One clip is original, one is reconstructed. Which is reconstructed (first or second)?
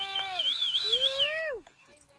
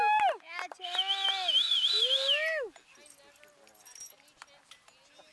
first